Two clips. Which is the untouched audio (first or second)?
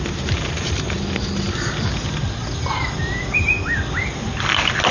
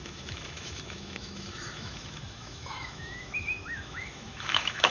first